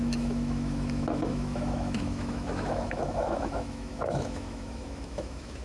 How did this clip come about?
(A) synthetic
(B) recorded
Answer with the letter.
A